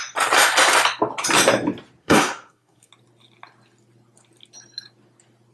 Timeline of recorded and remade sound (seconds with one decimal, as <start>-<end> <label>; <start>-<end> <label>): 0.0-2.0 recorded; 2.0-2.9 remade; 2.9-5.5 recorded